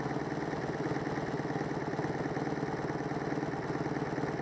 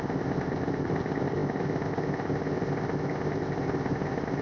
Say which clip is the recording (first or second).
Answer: first